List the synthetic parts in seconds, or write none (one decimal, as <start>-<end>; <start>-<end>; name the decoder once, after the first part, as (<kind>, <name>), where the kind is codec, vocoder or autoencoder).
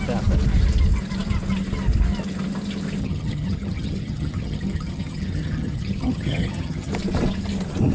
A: 3.0-6.9 (vocoder, HiFi-GAN)